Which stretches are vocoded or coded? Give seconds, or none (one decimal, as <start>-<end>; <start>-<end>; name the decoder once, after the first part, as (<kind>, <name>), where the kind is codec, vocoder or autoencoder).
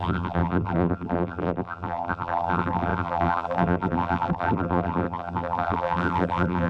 0.0-6.7 (vocoder, BigVGAN v2)